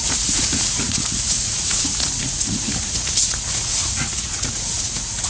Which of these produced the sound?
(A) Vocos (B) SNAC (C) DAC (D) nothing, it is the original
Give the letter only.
A